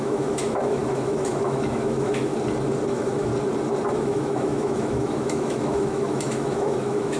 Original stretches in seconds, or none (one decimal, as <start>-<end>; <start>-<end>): 2.3-2.9; 3.3-3.9